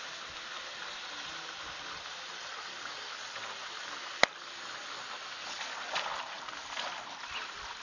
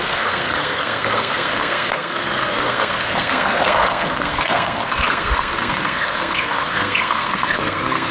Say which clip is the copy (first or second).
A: second